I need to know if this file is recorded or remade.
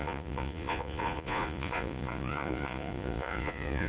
remade